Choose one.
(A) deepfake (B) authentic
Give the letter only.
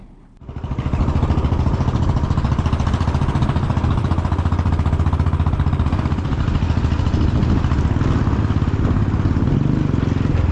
B